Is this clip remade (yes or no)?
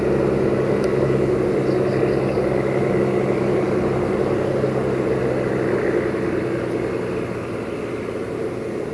no